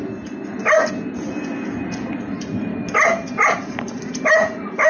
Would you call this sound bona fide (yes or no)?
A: yes